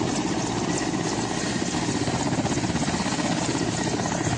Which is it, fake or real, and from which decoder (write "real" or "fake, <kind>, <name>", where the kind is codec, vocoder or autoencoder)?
real